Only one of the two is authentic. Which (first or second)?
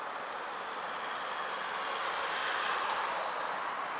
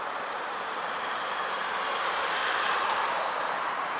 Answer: first